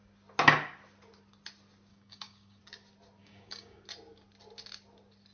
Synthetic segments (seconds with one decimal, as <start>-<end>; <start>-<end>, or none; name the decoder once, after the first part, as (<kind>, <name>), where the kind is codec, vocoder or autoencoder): 1.9-2.6 (codec, DAC); 3.2-3.8